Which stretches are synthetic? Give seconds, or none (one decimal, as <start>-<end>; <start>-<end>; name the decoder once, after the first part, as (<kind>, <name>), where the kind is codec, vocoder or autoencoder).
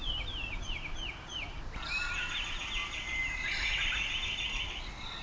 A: none